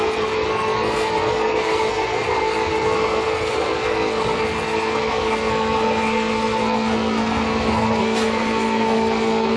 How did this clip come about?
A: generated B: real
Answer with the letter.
A